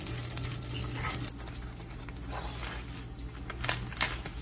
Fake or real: real